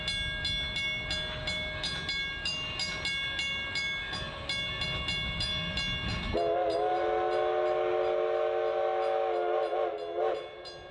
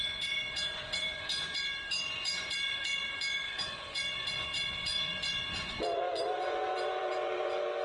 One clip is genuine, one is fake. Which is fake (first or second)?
second